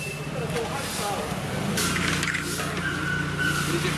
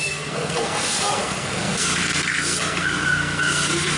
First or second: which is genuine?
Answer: first